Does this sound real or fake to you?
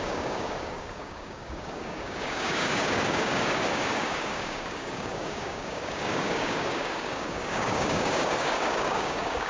fake